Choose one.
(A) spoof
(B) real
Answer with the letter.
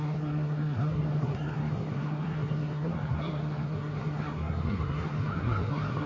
A